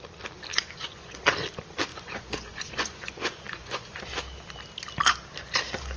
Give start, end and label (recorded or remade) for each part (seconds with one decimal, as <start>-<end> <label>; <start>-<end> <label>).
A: 0.0-0.5 recorded; 0.5-1.2 remade; 1.2-1.9 recorded; 1.9-4.0 remade; 4.0-6.0 recorded